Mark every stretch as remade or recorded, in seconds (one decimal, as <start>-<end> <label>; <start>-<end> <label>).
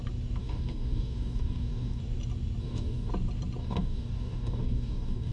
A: 0.0-0.4 recorded; 0.4-2.0 remade; 2.0-2.6 recorded; 2.6-3.1 remade; 3.1-3.6 recorded; 3.6-5.3 remade